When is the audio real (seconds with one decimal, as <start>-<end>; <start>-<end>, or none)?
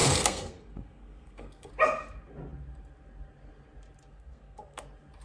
1.7-4.1; 4.8-5.2